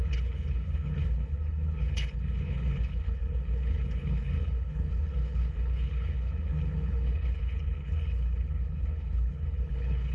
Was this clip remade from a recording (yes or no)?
yes